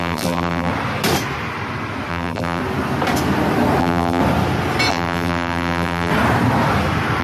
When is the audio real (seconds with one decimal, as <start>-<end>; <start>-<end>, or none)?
0.7-2.1; 2.6-3.8; 4.2-4.9; 6.1-7.2